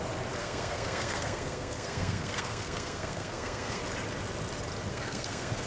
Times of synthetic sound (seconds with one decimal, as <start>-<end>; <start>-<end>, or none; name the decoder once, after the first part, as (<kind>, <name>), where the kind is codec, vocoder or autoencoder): 0.4-3.8 (codec, SNAC); 4.9-5.7